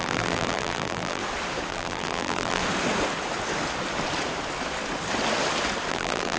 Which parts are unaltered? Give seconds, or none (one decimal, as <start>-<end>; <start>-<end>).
1.2-1.7; 2.6-5.9